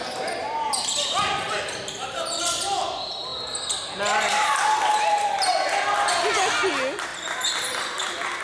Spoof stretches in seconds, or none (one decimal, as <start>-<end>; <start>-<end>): none